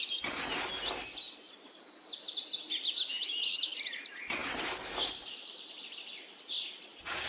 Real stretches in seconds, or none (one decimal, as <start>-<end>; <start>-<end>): 0.0-3.1; 3.7-7.3